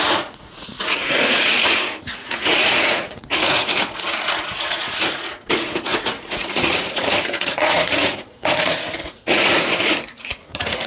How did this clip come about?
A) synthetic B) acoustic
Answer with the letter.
A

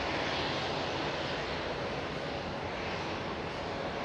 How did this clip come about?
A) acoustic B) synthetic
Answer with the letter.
A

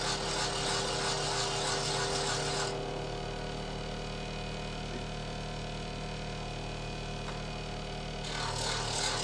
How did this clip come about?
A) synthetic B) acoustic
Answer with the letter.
B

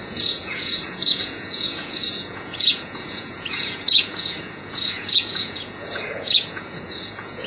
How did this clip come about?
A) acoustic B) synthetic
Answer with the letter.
B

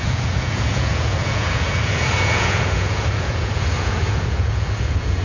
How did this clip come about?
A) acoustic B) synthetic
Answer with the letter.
B